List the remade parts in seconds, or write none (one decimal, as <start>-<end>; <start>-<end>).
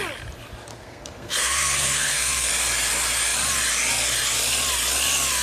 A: 0.7-2.5